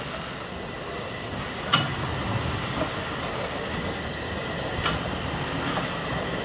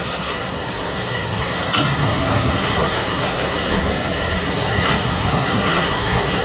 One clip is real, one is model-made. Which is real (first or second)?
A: first